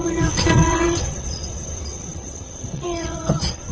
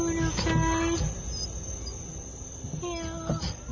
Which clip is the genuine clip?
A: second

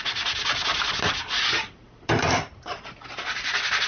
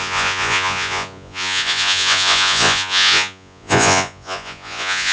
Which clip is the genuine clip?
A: first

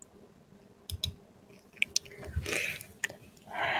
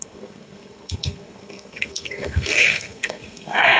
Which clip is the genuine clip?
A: first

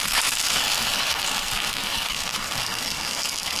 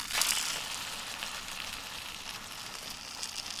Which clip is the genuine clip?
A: second